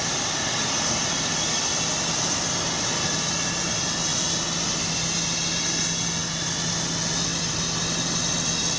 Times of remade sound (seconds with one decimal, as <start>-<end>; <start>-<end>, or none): none